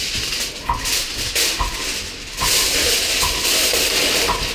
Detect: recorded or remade recorded